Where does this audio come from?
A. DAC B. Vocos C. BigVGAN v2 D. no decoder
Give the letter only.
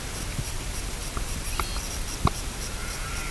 D